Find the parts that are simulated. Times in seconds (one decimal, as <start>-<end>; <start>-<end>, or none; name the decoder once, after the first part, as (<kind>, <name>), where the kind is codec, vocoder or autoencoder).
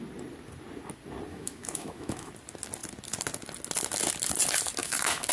1.3-2.3 (autoencoder, DAC-VAE); 4.8-5.3